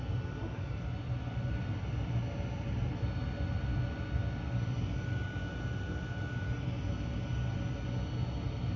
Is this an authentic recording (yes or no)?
yes